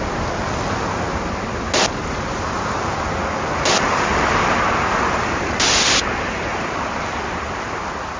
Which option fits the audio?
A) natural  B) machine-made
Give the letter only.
A